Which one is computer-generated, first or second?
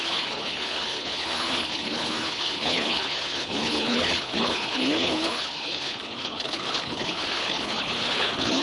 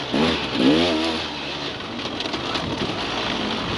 first